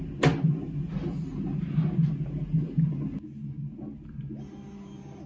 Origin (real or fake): real